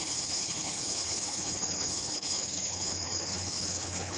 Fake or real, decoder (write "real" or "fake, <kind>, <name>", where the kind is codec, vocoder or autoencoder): fake, codec, HILCodec